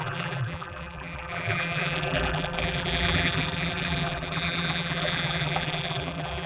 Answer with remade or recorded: remade